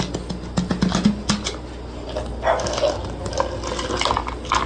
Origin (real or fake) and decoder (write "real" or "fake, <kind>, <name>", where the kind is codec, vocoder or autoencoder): real